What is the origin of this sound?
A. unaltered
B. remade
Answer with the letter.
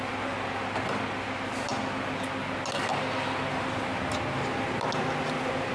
A